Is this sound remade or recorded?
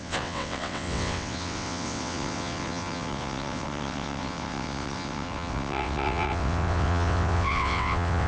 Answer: remade